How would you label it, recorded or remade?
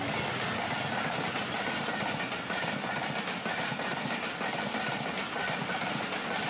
recorded